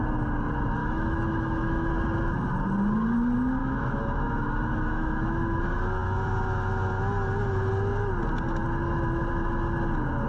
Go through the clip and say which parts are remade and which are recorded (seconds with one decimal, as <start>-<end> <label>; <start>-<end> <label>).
0.0-0.8 recorded; 0.8-1.9 remade; 1.9-3.6 recorded; 3.6-5.6 remade; 5.6-10.3 recorded